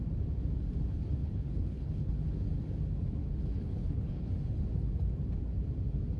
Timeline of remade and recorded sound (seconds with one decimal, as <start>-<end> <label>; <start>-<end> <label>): 0.0-1.2 recorded; 1.2-2.1 remade; 2.1-3.2 recorded; 3.2-4.3 remade; 4.3-6.2 recorded